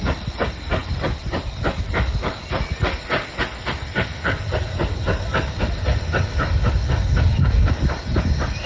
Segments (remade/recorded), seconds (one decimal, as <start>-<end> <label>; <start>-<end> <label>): 0.0-8.7 recorded